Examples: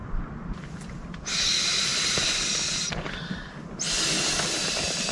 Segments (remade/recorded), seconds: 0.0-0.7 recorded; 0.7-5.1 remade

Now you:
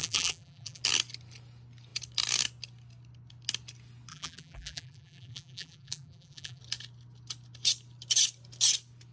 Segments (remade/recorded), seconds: 0.0-0.8 remade; 0.8-4.1 recorded; 4.1-6.6 remade; 6.6-9.1 recorded